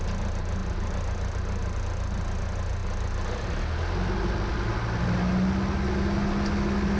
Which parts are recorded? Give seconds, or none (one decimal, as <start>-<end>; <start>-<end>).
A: 0.0-7.0